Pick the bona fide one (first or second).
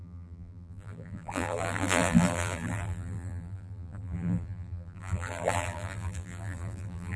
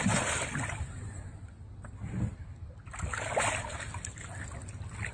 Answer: second